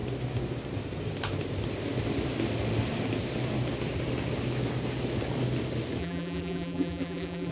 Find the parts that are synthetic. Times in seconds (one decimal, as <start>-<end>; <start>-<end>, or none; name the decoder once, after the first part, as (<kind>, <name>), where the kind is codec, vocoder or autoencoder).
6.0-7.5 (vocoder, BigVGAN v2)